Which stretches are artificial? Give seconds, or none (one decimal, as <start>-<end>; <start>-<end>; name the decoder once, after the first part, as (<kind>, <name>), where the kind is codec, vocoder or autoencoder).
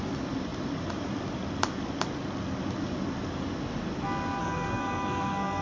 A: 4.4-5.6 (codec, SNAC)